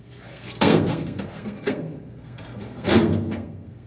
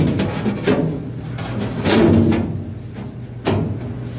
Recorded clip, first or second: second